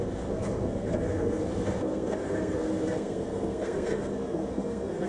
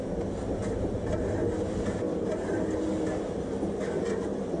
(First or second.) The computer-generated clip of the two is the first